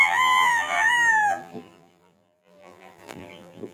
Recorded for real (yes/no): no